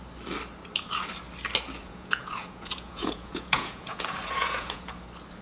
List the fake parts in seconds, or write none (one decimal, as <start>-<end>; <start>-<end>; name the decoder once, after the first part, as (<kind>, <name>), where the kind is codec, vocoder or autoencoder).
1.8-5.0 (vocoder, Vocos)